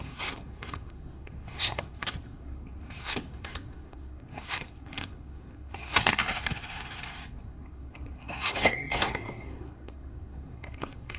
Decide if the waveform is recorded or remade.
remade